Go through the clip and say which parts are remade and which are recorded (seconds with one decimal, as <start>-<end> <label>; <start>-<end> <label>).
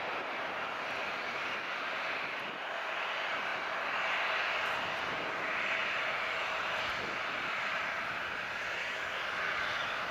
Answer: 0.0-8.8 recorded; 8.8-10.1 remade